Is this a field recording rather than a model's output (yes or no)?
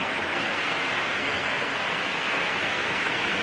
no